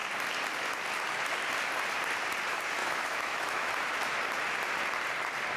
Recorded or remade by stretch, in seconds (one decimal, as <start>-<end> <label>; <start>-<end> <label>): 0.0-2.8 recorded; 2.8-3.7 remade; 3.7-5.6 recorded